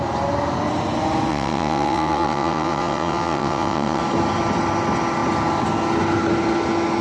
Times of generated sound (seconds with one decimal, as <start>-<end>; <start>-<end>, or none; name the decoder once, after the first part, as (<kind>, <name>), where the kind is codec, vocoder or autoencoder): 1.3-4.0 (vocoder, WaveNeXt)